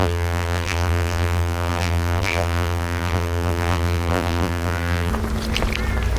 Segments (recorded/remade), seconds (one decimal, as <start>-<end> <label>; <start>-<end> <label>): 0.0-5.1 remade; 5.1-6.2 recorded